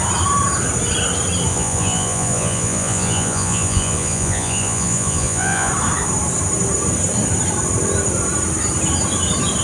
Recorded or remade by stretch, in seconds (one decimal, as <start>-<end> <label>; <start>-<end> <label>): 0.0-1.5 recorded; 1.5-5.7 remade; 5.7-9.6 recorded